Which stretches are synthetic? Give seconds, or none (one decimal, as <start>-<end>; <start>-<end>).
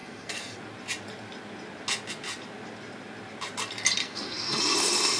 0.0-0.6; 4.0-4.6